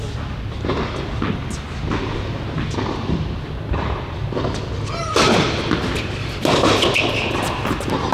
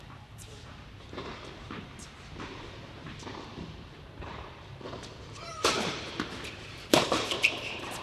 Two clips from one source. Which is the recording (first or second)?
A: first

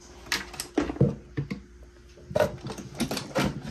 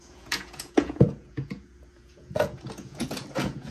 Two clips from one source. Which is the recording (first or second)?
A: first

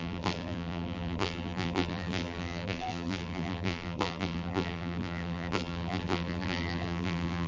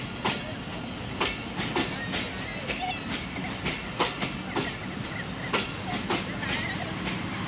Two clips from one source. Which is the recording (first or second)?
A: second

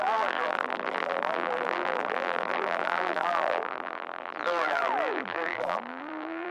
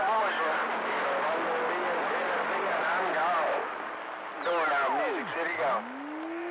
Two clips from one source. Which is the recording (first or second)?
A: second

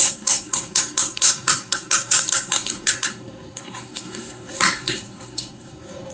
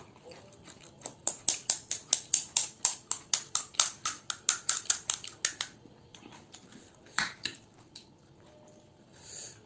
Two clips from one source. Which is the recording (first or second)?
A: second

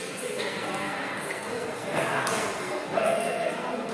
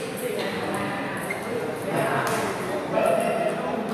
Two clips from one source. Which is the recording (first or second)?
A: second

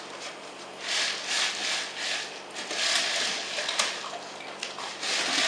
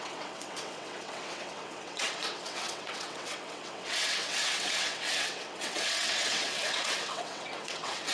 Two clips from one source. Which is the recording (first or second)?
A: first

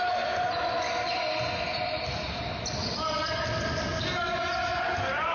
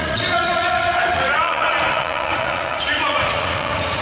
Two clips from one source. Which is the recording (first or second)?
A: first